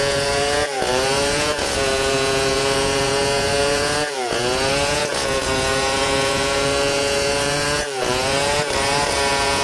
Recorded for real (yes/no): no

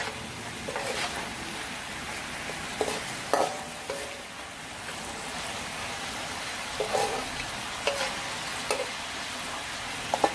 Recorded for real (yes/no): yes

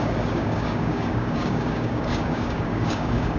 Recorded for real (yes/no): no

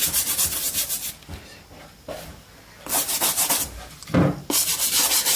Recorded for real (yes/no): yes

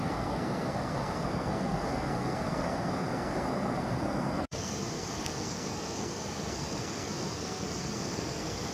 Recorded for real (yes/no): no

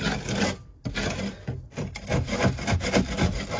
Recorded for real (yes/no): yes